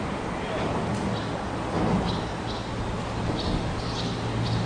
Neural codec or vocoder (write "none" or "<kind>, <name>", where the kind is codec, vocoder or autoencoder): none